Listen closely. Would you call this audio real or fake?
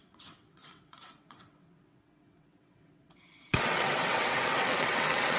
fake